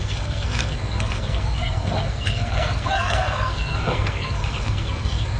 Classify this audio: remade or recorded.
remade